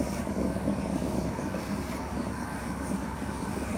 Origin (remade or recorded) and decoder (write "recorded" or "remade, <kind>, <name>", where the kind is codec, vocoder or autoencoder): remade, codec, DAC